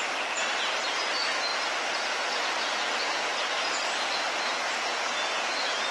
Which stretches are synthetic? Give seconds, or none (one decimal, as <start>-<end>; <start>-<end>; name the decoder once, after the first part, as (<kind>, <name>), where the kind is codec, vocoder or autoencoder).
3.1-3.8 (vocoder, Vocos); 4.9-5.5